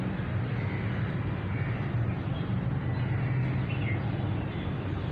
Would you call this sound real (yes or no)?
yes